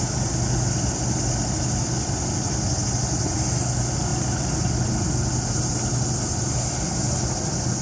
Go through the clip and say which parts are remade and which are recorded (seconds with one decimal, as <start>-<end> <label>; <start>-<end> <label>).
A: 0.0-7.8 recorded